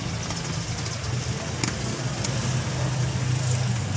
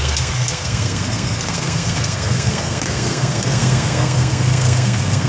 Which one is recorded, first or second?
first